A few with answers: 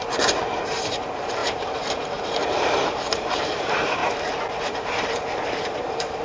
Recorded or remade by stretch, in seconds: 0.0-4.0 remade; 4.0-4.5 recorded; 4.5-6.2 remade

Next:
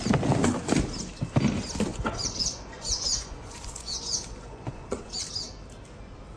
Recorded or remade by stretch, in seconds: 0.0-1.9 recorded; 1.9-5.1 remade; 5.1-6.4 recorded